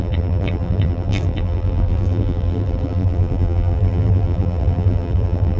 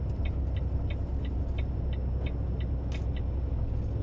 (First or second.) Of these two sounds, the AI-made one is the first